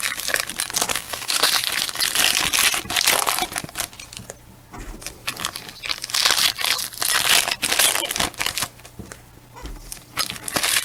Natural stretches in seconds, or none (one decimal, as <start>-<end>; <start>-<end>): 0.0-0.9; 1.5-10.8